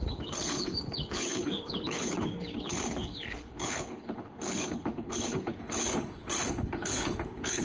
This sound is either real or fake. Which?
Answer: fake